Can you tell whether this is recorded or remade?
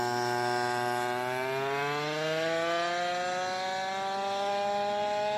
recorded